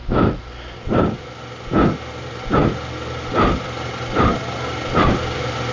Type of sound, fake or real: real